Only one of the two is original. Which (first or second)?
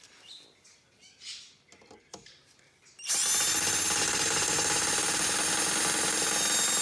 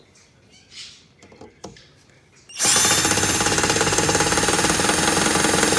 first